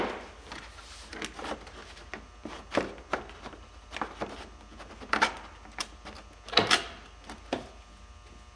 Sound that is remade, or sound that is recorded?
recorded